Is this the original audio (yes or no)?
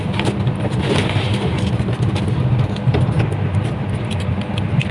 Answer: yes